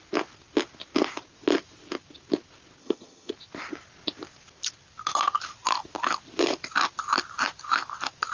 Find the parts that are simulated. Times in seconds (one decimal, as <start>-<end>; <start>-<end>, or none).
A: 2.8-3.3